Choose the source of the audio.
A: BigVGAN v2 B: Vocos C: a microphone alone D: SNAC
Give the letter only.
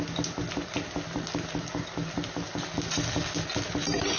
C